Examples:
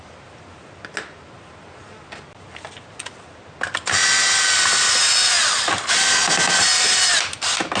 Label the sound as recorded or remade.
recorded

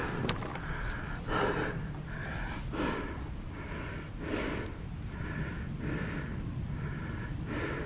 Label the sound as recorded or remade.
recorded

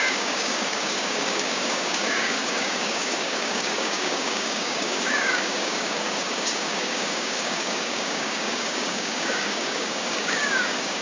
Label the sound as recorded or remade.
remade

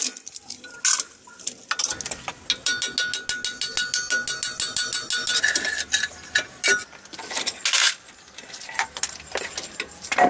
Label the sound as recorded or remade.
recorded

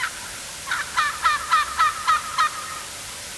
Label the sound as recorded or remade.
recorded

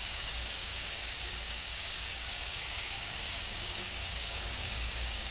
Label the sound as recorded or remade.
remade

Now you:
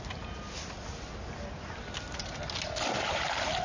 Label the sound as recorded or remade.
recorded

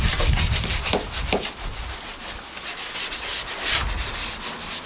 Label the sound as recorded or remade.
recorded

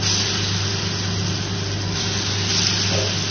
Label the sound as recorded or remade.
recorded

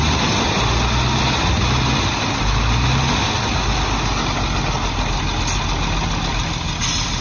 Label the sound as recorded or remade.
recorded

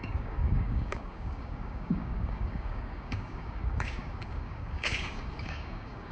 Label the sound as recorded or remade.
remade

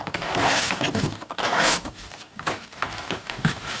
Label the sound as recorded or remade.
remade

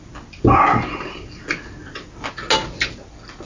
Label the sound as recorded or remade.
recorded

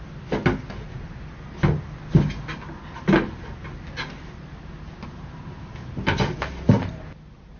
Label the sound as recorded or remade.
recorded